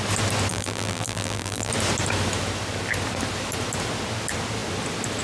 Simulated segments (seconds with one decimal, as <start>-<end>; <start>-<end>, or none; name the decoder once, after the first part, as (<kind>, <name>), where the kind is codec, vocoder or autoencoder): 0.5-1.7 (vocoder, BigVGAN v2)